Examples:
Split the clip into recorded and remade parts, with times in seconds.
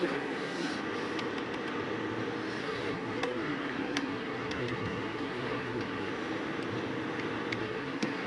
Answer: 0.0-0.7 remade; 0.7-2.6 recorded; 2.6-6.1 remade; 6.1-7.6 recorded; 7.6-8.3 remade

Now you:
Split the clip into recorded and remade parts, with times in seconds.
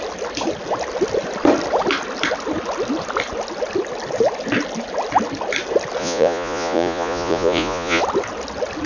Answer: 0.0-6.0 recorded; 6.0-8.0 remade; 8.0-8.9 recorded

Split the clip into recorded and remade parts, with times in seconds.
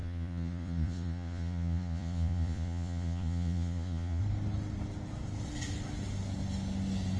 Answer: 0.0-4.2 remade; 4.2-7.2 recorded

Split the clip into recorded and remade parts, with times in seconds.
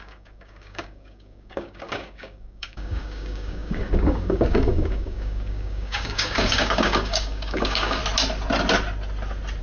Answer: 0.0-8.0 remade; 8.0-9.6 recorded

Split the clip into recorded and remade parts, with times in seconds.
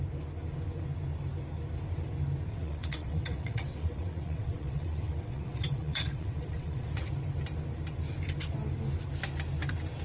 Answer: 0.0-2.5 recorded; 2.5-7.1 remade; 7.1-10.0 recorded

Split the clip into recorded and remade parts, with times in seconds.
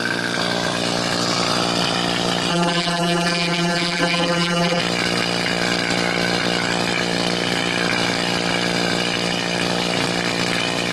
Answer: 0.0-2.5 recorded; 2.5-4.8 remade; 4.8-10.9 recorded